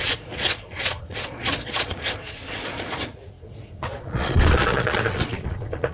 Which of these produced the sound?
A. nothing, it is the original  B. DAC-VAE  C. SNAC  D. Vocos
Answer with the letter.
D